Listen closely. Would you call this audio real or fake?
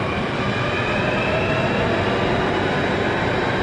real